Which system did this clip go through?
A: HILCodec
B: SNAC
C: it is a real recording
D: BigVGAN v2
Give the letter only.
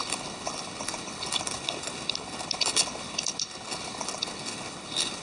A